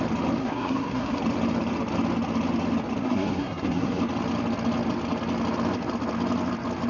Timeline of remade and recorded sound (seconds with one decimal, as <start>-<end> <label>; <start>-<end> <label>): 0.0-0.4 recorded; 0.4-1.2 remade; 1.2-3.0 recorded; 3.0-4.0 remade; 4.0-6.9 recorded